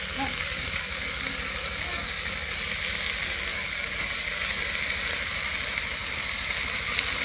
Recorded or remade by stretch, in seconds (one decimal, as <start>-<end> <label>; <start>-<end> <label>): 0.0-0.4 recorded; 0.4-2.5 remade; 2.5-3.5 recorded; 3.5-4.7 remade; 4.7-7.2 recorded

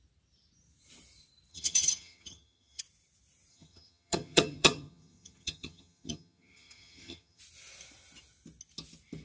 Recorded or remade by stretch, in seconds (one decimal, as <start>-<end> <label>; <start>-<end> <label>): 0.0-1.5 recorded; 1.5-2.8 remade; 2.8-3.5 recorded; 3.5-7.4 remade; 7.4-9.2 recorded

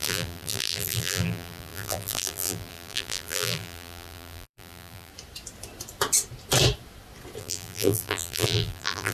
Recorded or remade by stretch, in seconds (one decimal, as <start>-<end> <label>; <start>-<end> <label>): 0.0-5.1 remade; 5.1-7.4 recorded; 7.4-9.1 remade

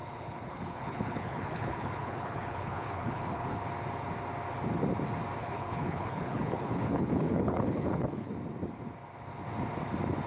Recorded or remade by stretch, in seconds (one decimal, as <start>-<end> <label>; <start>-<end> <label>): 0.0-3.6 remade; 3.6-5.4 recorded; 5.4-8.3 remade; 8.3-10.3 recorded

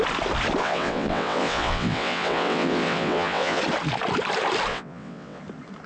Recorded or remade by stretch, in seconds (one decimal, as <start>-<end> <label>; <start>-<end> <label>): 0.0-0.6 recorded; 0.6-3.6 remade; 3.6-4.7 recorded; 4.7-5.4 remade; 5.4-5.9 recorded

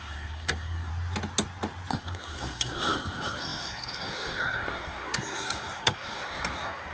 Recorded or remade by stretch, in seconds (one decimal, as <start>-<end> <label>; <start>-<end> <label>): 0.0-0.9 remade; 0.9-1.9 recorded; 1.9-6.9 remade